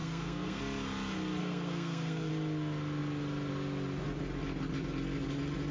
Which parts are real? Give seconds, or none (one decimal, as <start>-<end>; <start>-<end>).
0.6-1.4; 2.3-5.7